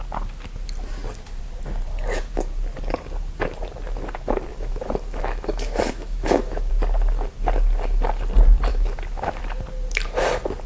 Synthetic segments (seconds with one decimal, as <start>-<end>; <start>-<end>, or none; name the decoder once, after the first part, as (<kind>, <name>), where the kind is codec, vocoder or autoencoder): 4.5-6.7 (autoencoder, DAC-VAE); 8.7-9.4